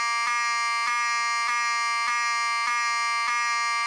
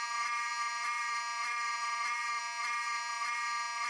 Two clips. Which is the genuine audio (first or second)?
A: first